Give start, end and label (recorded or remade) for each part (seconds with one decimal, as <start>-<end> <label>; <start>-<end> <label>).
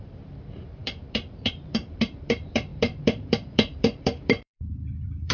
0.0-5.3 remade